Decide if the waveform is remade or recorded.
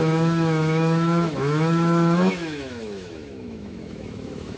remade